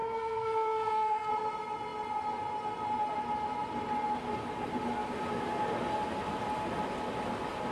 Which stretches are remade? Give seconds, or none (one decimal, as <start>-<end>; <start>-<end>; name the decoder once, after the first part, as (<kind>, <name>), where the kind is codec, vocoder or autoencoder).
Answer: 0.0-1.3 (codec, SNAC)